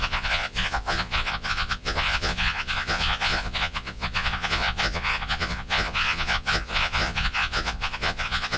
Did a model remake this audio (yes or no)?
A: yes